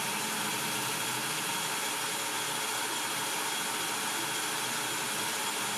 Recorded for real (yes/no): yes